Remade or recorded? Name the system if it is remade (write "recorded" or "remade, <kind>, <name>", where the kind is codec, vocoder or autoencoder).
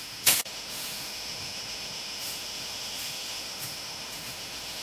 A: remade, autoencoder, DAC-VAE